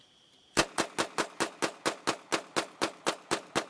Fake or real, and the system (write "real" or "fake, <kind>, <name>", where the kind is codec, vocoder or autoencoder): real